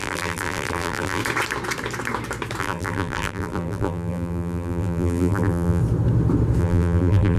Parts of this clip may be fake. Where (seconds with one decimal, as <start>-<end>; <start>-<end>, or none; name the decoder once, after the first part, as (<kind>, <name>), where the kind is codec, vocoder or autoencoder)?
0.0-1.2 (vocoder, BigVGAN v2); 2.6-5.8; 6.6-7.4